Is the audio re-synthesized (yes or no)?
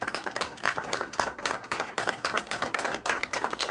yes